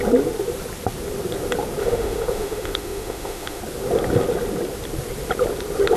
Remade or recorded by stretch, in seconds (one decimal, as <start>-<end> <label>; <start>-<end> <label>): 0.0-1.8 recorded; 1.8-3.6 remade; 3.6-6.0 recorded